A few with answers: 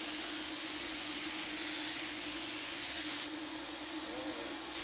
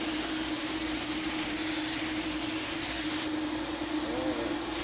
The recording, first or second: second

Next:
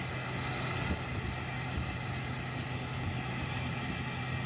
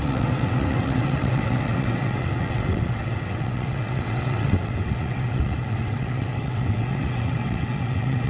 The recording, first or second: first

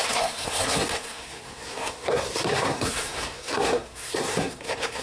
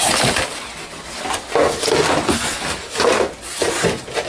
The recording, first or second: second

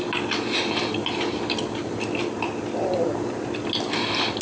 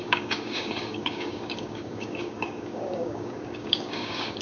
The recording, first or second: first